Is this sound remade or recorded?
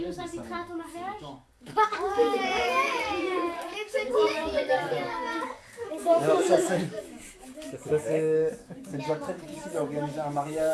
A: remade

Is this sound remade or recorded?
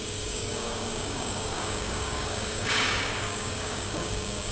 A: remade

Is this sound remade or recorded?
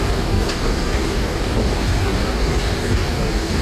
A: remade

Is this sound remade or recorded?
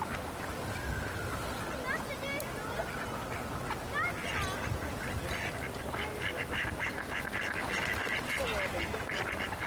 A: recorded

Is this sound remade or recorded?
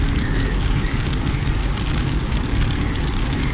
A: remade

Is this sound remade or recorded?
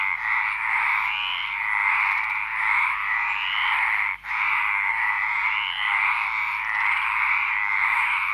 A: recorded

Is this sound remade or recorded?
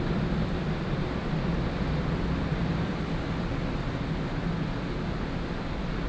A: recorded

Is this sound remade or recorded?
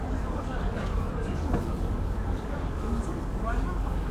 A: remade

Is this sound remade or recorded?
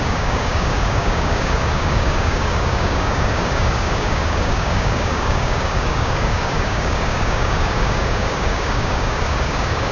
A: remade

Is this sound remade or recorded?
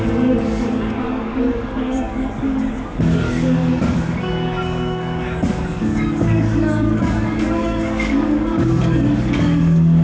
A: remade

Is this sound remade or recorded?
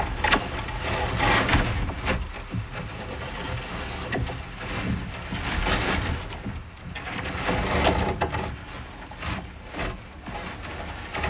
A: recorded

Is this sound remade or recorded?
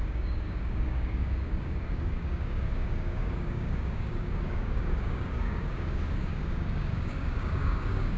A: remade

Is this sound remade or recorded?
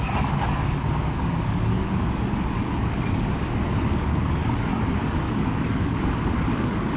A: remade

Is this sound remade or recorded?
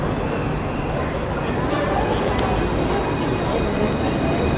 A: recorded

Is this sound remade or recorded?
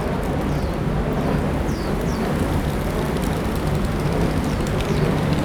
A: recorded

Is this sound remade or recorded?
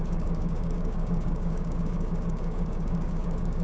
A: remade